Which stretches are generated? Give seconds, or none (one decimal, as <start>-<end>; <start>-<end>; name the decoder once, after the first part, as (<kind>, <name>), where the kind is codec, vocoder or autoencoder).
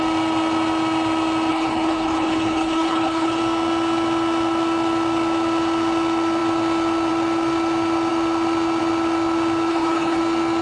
1.5-3.4 (codec, HILCodec); 9.7-10.2